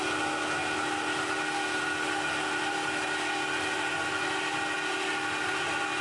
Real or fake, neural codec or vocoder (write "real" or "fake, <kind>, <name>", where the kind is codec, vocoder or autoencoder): real